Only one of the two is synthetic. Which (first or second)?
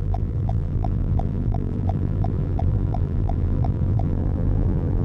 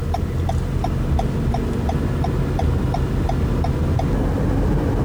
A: first